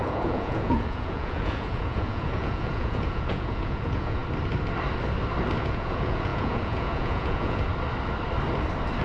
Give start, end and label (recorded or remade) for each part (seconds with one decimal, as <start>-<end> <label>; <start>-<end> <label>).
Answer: 0.0-4.2 remade; 4.2-5.6 recorded; 5.6-7.7 remade; 7.7-9.0 recorded